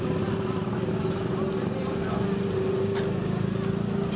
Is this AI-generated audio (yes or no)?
no